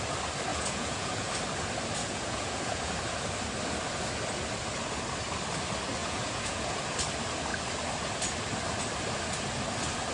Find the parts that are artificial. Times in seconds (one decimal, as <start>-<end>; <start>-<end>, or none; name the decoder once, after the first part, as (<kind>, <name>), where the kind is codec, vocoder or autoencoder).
0.5-1.3 (vocoder, Vocos); 2.0-2.9; 6.0-6.8